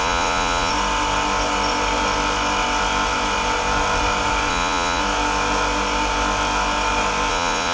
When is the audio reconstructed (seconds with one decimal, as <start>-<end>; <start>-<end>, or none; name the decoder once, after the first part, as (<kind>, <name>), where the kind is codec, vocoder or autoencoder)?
0.0-0.7 (vocoder, Vocos); 4.5-5.0; 7.3-7.7